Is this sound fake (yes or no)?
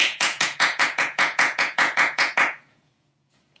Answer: yes